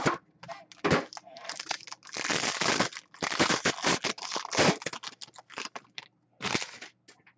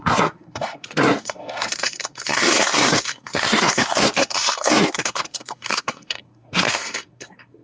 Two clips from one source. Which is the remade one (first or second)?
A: second